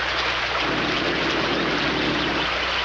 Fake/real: real